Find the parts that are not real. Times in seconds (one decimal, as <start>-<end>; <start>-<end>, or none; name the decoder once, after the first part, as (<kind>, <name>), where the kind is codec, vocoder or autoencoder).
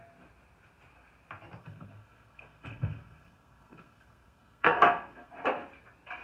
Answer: 1.6-5.3 (codec, SNAC)